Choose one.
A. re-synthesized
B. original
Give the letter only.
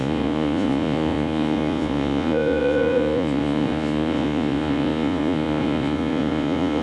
A